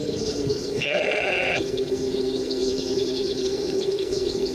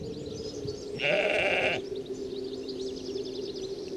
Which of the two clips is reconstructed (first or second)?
first